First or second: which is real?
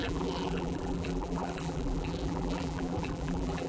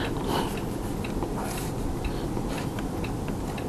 second